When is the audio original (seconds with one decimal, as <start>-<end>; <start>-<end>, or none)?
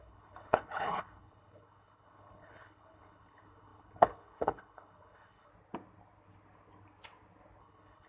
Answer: 5.5-7.6